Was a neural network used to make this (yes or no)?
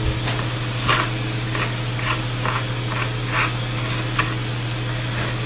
no